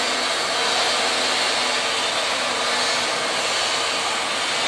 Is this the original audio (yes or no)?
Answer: yes